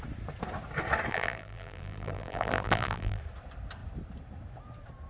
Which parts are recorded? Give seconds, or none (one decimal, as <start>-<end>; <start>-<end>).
0.0-1.1; 3.2-5.1